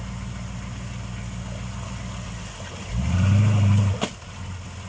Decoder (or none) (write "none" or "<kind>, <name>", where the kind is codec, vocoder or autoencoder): none